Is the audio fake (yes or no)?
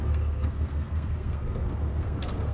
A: yes